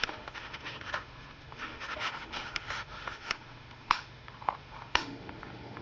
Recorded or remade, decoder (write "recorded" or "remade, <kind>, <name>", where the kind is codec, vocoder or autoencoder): remade, autoencoder, DAC-VAE